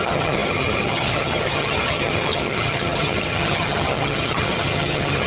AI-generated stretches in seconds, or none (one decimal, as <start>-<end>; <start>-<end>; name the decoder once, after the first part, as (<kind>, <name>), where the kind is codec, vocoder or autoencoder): 0.0-5.3 (vocoder, HiFi-GAN)